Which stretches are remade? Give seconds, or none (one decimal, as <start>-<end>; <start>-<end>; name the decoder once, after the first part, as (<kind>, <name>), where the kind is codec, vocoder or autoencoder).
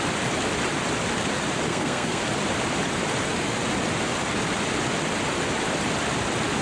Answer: 1.7-2.2 (codec, SNAC)